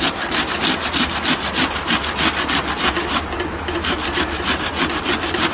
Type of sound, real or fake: real